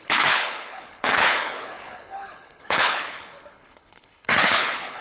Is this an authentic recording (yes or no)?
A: no